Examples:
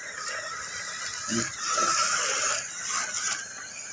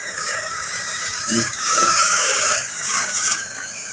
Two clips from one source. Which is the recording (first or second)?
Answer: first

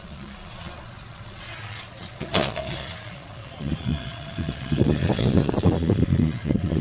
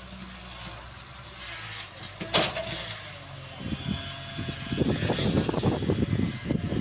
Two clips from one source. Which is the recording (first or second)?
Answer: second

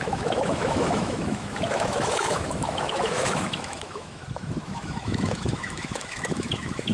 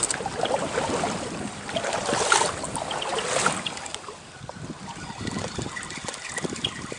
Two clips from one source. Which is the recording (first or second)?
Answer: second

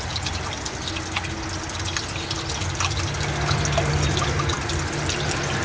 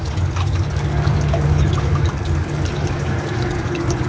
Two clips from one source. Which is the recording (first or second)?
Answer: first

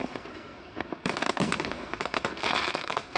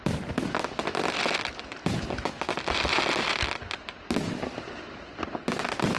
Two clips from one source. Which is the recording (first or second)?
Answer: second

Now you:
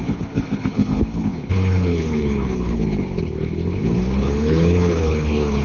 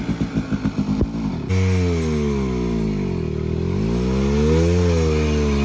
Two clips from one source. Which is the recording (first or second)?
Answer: second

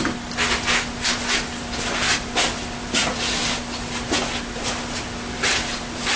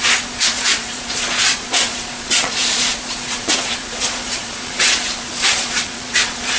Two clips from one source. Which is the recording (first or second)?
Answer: first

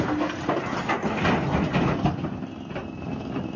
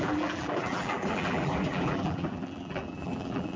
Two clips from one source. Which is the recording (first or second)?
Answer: first